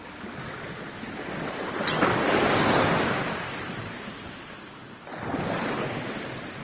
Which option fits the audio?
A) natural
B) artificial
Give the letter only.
A